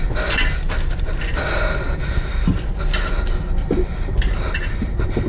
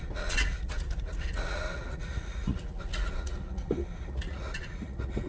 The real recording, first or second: first